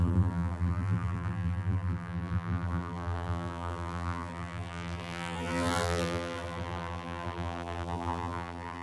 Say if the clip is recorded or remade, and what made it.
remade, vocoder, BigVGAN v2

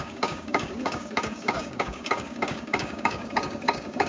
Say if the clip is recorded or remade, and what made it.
remade, codec, DAC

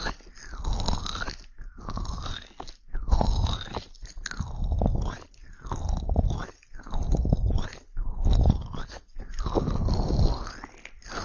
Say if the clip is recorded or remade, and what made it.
recorded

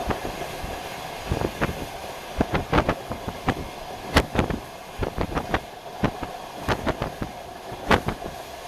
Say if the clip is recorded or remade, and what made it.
recorded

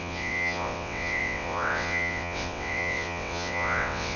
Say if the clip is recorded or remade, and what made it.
remade, vocoder, WaveNeXt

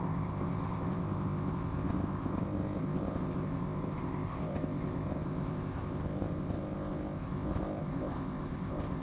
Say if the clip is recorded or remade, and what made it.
remade, codec, ZipCodec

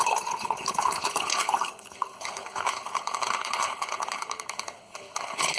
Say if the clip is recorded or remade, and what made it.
remade, codec, HILCodec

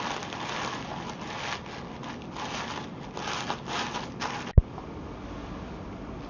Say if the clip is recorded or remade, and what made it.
recorded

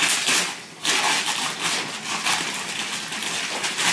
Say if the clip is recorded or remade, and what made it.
recorded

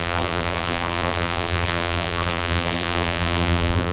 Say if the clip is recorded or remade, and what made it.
remade, vocoder, BigVGAN v2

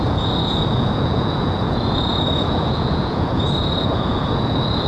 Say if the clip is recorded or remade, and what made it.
remade, vocoder, Vocos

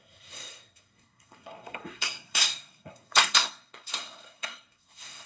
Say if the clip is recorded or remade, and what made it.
remade, codec, SNAC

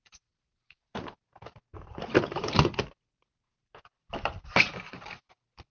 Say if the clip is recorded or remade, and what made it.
remade, vocoder, BigVGAN v2